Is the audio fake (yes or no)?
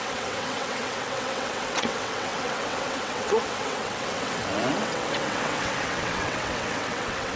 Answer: yes